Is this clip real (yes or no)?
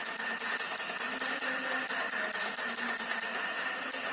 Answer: yes